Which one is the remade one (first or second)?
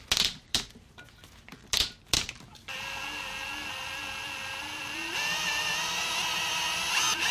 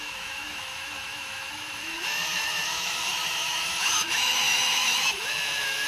second